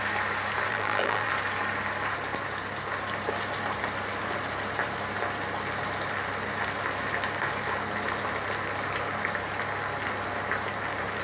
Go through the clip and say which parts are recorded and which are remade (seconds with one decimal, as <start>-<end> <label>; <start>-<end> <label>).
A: 0.0-0.7 recorded; 0.7-1.3 remade; 1.3-11.2 recorded